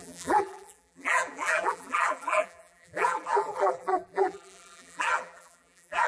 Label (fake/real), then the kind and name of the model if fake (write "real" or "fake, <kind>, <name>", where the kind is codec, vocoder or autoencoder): fake, vocoder, BigVGAN v2